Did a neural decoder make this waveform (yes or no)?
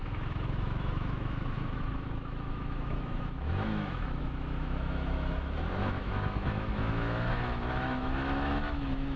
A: yes